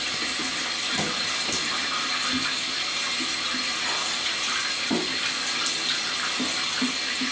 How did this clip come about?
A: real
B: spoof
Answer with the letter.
A